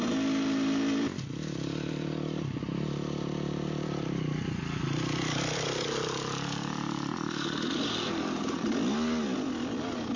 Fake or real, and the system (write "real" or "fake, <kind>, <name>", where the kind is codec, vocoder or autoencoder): real